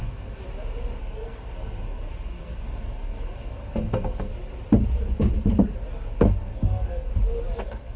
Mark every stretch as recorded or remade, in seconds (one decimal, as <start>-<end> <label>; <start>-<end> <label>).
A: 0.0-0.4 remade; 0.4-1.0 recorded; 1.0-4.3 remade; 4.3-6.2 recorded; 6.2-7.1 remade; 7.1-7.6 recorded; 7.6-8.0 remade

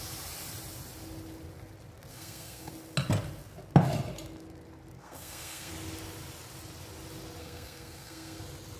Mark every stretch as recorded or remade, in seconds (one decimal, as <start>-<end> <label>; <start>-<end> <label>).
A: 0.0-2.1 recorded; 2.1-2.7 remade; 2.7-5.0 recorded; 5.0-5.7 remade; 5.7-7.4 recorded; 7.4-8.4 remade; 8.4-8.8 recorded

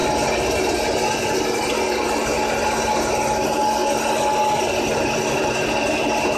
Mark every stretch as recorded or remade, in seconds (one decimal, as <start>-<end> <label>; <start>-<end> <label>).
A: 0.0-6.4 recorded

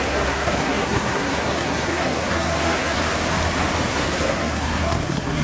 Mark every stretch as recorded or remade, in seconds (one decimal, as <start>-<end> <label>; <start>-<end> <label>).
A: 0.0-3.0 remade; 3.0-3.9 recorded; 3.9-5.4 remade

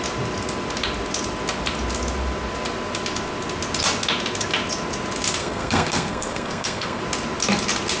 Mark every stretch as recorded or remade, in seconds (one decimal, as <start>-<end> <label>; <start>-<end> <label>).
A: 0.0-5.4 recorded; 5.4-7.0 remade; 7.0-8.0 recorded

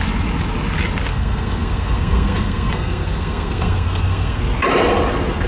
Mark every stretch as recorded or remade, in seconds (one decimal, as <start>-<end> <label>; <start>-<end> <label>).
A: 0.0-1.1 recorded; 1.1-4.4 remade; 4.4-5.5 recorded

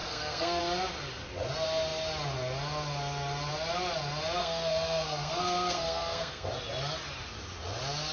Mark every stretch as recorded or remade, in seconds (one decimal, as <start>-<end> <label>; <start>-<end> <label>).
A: 0.0-0.6 remade; 0.6-4.4 recorded; 4.4-6.5 remade; 6.5-8.1 recorded

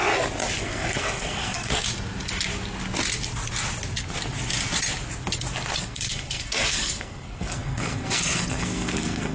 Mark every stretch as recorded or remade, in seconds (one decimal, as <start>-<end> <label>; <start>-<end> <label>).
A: 0.0-0.6 recorded; 0.6-1.7 remade; 1.7-5.8 recorded; 5.8-9.3 remade